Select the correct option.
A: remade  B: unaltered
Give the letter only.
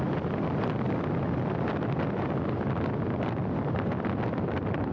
B